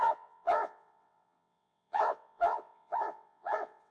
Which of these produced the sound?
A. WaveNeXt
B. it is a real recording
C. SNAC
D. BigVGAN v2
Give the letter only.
A